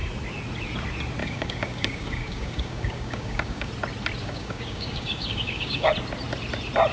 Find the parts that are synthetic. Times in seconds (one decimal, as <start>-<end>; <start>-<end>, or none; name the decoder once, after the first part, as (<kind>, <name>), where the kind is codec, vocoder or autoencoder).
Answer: 1.2-3.7 (codec, DAC); 4.2-5.9